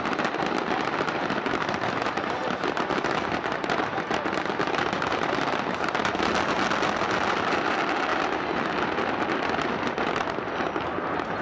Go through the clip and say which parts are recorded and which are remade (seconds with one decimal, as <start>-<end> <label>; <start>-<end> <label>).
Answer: 0.0-11.4 recorded